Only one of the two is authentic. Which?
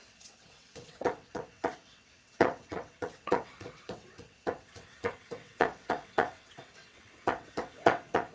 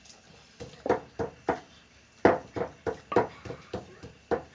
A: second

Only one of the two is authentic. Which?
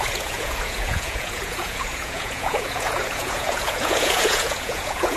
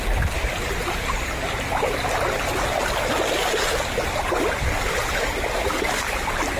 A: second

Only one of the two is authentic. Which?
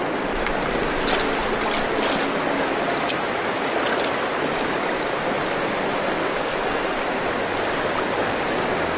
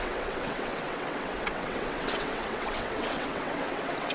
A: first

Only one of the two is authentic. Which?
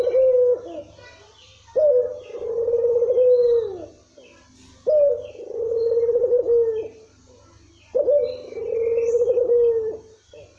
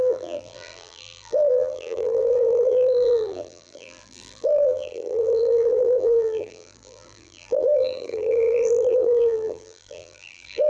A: first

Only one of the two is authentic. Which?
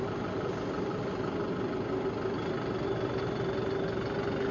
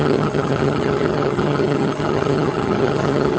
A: first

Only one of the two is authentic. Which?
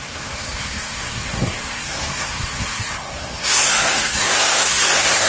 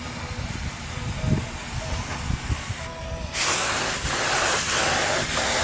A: second